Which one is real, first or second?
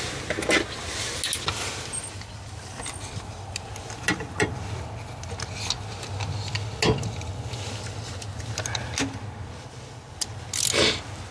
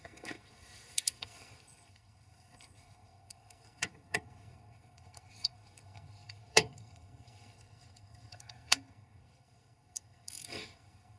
first